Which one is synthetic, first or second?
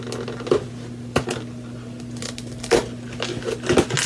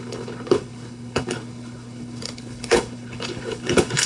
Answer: second